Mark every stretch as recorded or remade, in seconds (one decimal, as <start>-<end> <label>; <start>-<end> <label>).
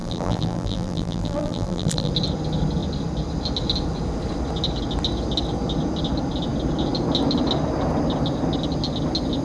0.0-2.1 remade; 2.1-9.4 recorded